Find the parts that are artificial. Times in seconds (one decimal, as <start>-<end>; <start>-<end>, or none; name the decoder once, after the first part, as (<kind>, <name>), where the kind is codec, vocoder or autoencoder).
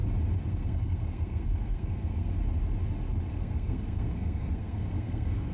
0.5-2.3 (codec, SNAC); 3.3-5.5